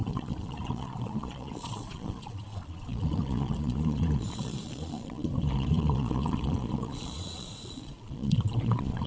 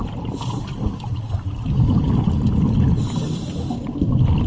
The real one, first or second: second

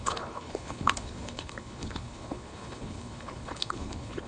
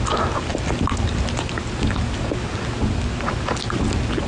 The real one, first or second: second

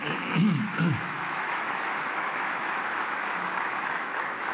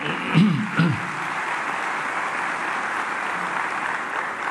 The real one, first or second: second